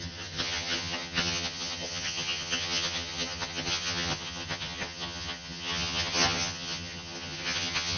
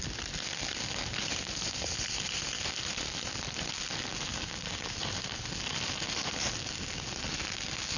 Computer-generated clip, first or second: first